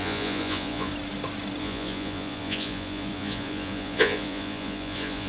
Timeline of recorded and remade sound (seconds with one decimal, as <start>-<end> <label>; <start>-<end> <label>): 0.0-0.9 remade; 0.9-1.6 recorded; 1.6-5.3 remade